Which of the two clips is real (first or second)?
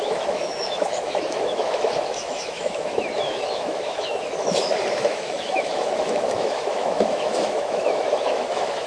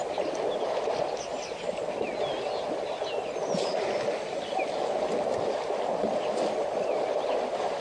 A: second